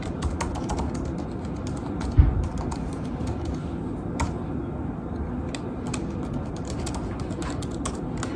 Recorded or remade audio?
recorded